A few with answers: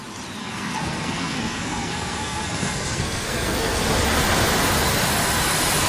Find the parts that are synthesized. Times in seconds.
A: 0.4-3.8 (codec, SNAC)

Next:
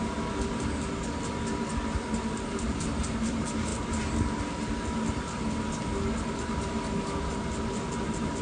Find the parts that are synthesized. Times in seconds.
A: none

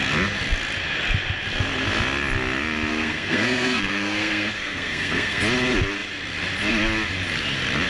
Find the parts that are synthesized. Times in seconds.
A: 2.9-5.4 (codec, SNAC)

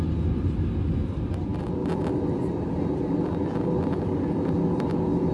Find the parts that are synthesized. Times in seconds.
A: none

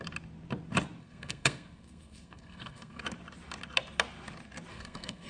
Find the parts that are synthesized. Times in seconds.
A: 1.0-3.0 (codec, SNAC); 4.7-5.3

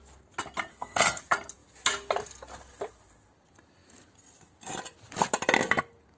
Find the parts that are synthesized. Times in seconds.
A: 0.7-1.2 (codec, SNAC)

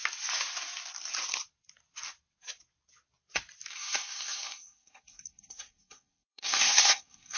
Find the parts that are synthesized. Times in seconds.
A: 3.7-7.4 (codec, SNAC)